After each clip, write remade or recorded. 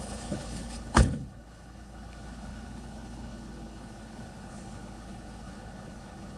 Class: remade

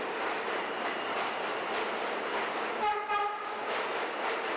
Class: recorded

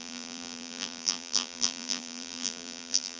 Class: remade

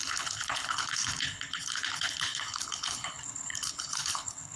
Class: remade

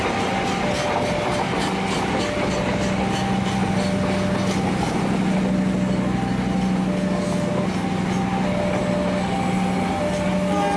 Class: recorded